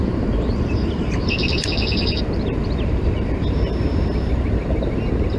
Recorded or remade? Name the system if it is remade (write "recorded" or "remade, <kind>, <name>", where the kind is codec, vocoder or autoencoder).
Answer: remade, vocoder, BigVGAN v2